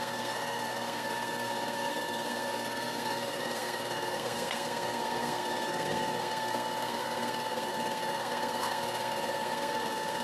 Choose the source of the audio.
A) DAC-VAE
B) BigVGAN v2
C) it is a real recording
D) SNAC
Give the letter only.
D